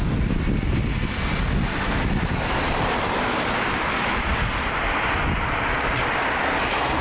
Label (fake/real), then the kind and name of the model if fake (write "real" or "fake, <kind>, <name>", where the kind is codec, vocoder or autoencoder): real